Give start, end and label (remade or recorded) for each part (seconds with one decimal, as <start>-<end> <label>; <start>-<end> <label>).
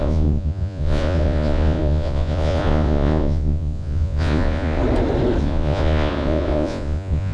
0.0-4.8 remade; 4.8-5.4 recorded; 5.4-7.3 remade